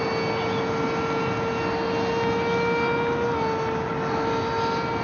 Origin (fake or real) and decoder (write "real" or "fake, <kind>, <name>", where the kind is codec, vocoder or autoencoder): real